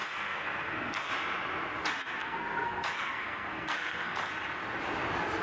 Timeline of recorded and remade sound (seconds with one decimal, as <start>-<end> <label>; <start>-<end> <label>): 0.0-1.1 remade; 1.1-2.2 recorded; 2.2-4.3 remade; 4.3-5.4 recorded